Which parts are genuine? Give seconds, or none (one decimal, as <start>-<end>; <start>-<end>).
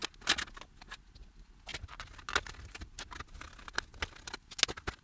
0.0-5.0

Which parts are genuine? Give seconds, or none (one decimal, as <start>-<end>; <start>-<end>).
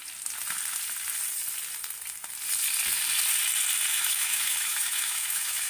0.0-3.9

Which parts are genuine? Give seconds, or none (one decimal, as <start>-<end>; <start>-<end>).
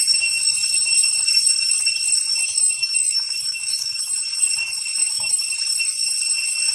0.0-2.4; 4.0-5.0; 5.5-6.7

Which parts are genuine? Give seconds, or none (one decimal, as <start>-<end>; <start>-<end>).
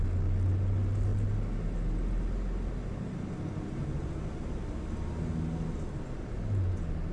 0.0-7.1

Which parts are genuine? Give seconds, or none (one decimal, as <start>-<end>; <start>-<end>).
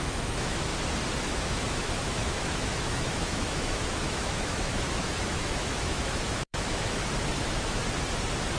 0.7-1.2; 7.8-8.6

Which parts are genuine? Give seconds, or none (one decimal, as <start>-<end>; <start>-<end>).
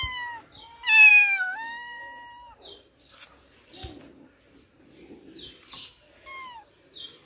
0.0-1.1; 2.0-7.3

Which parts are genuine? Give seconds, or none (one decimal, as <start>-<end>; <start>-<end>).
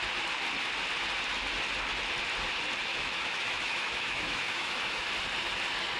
0.0-2.9; 5.0-6.0